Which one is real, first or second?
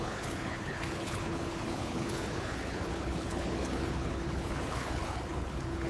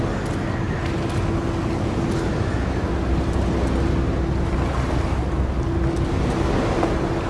second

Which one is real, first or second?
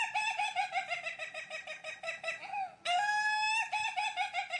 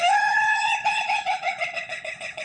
first